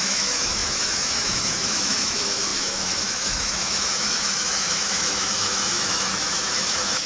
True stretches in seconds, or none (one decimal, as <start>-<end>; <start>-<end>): none

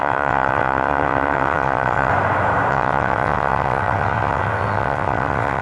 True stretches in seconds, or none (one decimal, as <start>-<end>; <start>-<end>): 2.1-2.7